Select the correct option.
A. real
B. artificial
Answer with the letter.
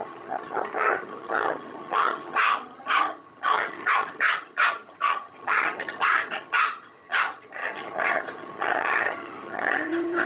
B